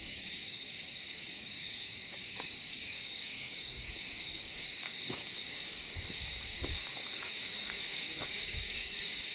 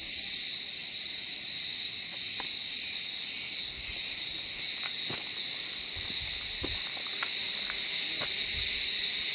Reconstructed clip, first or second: first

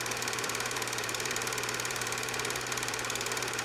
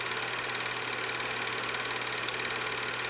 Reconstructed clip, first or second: first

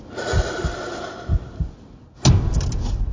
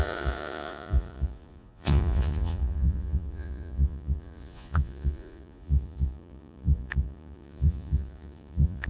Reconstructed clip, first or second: second